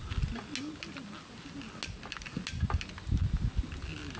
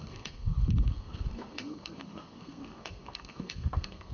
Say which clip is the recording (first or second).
first